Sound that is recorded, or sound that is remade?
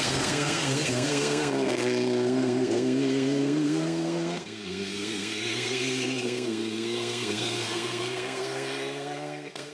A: remade